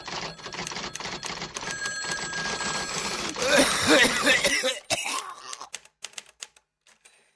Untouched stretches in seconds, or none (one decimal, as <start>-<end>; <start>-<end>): 0.0-7.4